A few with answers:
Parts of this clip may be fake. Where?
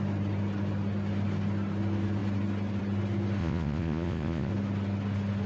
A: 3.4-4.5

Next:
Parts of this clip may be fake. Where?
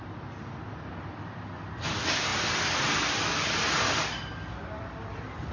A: none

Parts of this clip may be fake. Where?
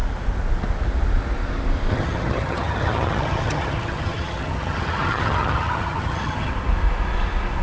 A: 1.9-6.5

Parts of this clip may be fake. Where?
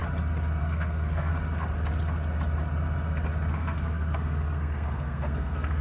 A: 0.6-1.3; 3.5-5.8